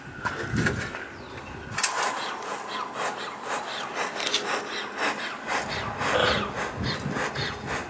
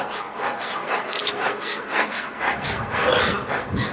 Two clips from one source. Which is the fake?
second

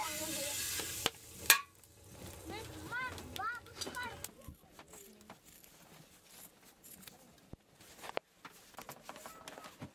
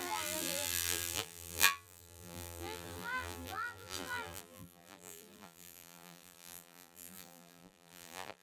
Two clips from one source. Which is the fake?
second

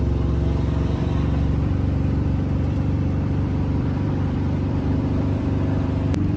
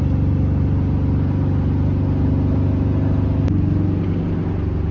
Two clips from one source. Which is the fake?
first